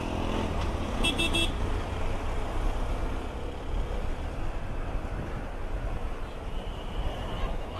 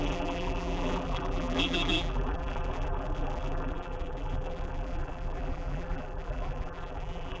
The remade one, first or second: second